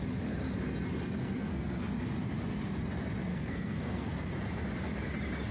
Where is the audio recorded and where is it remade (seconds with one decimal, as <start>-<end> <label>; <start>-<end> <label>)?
0.0-1.2 recorded; 1.2-1.8 remade; 1.8-3.3 recorded; 3.3-4.3 remade; 4.3-5.5 recorded